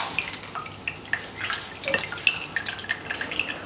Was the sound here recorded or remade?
recorded